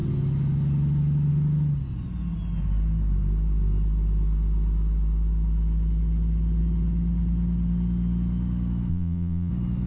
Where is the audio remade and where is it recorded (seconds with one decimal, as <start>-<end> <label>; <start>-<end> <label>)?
0.0-8.9 recorded; 8.9-9.5 remade; 9.5-9.9 recorded